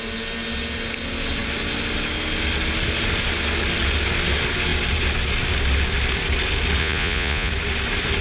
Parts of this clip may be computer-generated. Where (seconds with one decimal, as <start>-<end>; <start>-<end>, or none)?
6.8-7.5